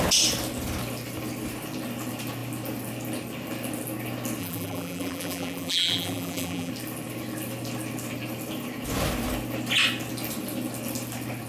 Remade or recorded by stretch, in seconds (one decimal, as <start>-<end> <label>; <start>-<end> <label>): 0.0-4.4 recorded; 4.4-6.7 remade; 6.7-11.5 recorded